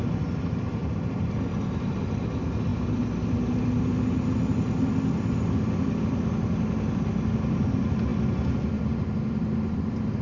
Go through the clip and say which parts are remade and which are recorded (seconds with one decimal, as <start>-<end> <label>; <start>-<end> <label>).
0.0-0.8 recorded; 0.8-2.0 remade; 2.0-10.2 recorded